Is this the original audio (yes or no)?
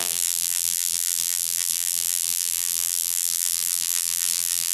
no